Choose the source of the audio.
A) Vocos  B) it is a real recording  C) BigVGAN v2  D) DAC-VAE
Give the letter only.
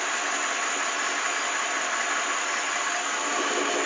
B